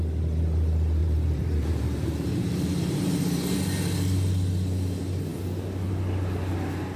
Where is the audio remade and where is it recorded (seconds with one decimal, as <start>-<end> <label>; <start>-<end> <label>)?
0.0-1.0 recorded; 1.0-3.6 remade; 3.6-7.0 recorded